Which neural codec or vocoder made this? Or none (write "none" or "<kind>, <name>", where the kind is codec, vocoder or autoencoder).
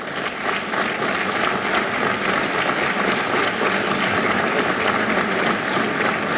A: none